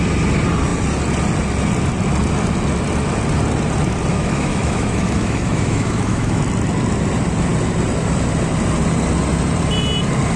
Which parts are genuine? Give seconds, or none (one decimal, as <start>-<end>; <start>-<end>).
0.0-4.1; 6.4-10.4